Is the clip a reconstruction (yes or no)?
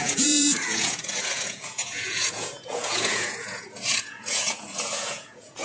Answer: yes